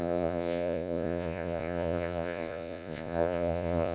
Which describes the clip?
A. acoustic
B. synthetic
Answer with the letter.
B